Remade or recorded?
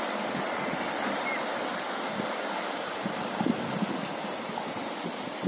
recorded